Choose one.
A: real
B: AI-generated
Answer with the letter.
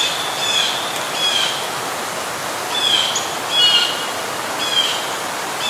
A